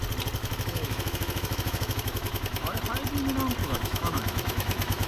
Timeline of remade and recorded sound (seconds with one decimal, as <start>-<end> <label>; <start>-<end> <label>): 0.0-0.4 recorded; 0.4-2.8 remade; 2.8-3.6 recorded; 3.6-5.1 remade